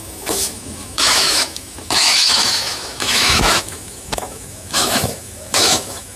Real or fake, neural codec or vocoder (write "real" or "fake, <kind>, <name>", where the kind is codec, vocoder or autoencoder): fake, autoencoder, DAC-VAE